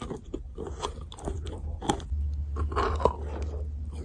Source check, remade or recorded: recorded